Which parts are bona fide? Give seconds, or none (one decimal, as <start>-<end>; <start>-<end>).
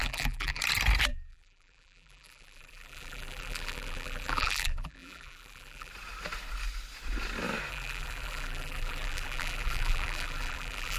0.6-1.1; 5.9-7.7